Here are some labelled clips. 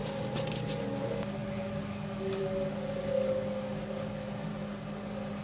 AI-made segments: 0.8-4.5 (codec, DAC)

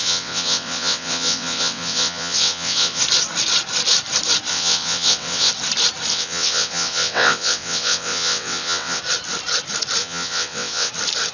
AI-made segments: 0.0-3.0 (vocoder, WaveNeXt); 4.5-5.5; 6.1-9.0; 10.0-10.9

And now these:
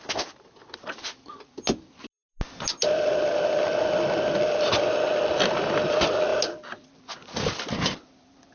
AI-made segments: none

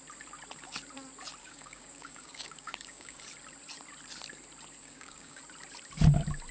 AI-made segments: 1.4-3.2 (codec, DAC); 4.8-5.4